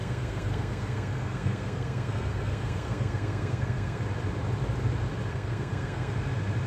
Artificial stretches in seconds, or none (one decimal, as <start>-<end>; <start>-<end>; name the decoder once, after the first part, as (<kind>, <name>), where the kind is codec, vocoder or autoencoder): 0.0-4.0 (codec, SNAC); 5.3-6.1